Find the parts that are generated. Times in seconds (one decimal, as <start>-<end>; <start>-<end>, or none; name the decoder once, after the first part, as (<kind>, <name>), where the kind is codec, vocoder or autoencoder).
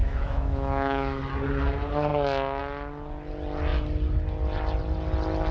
0.0-1.2 (autoencoder, DAC-VAE)